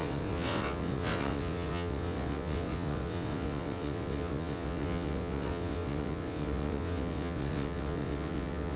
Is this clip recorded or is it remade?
remade